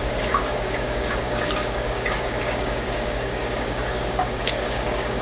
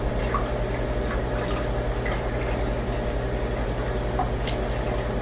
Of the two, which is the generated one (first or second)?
first